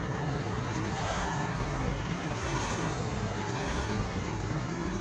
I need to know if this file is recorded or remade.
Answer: remade